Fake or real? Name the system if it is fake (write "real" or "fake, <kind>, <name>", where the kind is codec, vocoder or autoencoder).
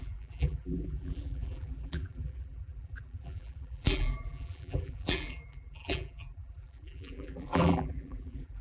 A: fake, vocoder, BigVGAN v2